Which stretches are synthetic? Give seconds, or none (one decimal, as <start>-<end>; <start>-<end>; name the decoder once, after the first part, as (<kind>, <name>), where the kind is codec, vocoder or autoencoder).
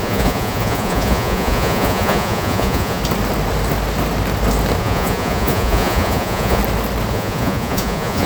0.0-3.0 (vocoder, Vocos); 4.8-6.6; 7.1-8.3